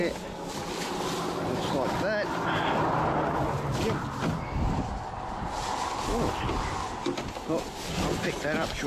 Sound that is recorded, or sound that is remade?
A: recorded